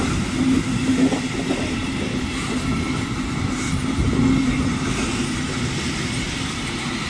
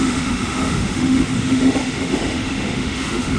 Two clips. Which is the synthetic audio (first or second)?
second